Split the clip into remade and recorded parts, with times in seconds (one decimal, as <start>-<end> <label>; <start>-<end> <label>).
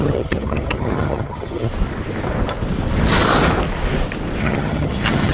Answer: 0.0-1.7 remade; 1.7-4.4 recorded; 4.4-5.3 remade